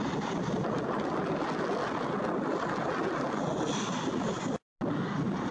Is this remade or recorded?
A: recorded